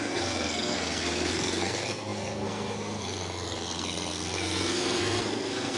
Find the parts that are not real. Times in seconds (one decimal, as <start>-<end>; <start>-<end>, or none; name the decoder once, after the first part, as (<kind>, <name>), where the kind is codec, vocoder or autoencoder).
0.0-5.8 (codec, SNAC)